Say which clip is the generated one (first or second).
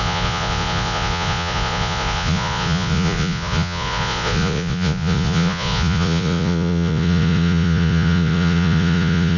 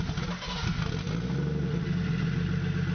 first